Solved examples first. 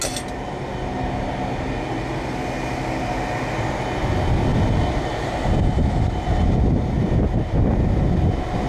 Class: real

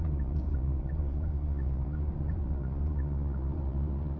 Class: fake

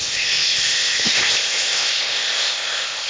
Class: fake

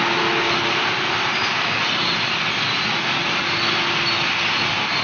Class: real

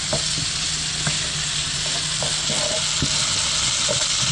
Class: real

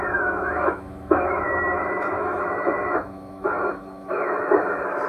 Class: fake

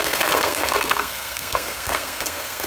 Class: fake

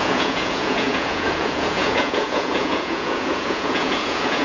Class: fake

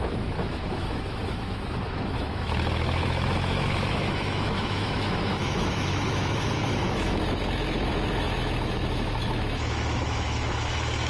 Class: fake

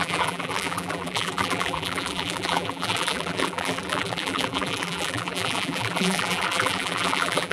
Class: fake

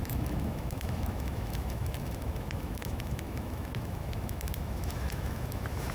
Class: fake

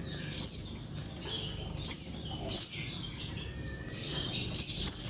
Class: real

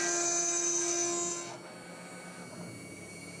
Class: real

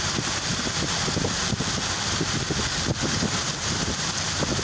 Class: real